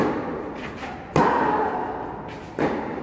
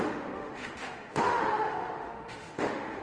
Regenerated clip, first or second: second